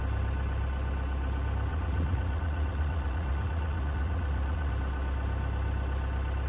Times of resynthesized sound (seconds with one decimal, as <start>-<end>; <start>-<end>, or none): 1.7-4.7

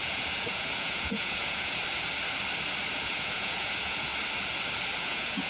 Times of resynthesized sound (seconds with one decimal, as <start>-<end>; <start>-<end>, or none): 0.0-1.8; 2.9-4.1; 5.0-5.5